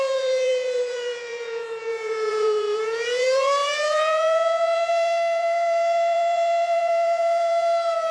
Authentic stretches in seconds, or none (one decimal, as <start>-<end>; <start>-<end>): none